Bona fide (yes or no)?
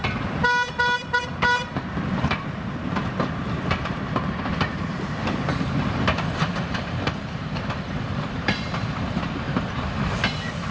no